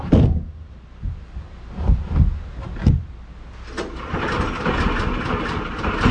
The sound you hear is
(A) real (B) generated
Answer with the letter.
A